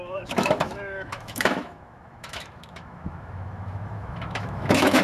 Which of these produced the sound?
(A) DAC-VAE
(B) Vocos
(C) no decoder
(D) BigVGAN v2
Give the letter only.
A